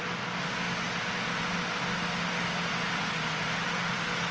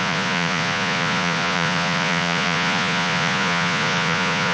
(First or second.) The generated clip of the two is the second